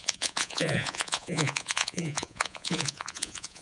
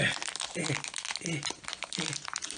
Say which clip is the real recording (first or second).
second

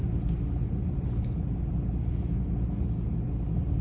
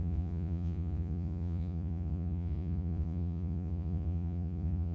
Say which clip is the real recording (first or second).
first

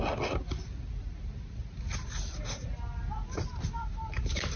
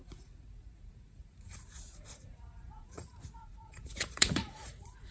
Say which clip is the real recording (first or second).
first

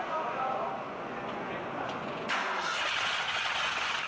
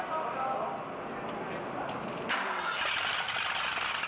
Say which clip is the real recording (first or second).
second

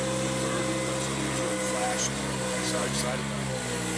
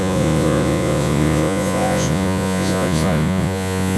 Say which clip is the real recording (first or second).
first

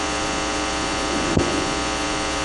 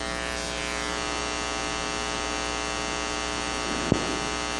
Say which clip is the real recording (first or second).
second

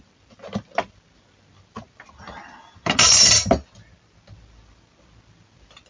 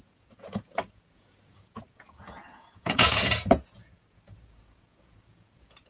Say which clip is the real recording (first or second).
first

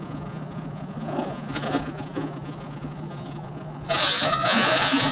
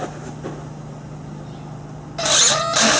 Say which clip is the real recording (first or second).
second